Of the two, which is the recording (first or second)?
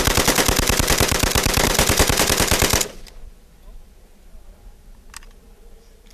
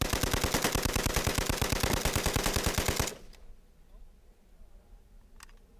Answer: second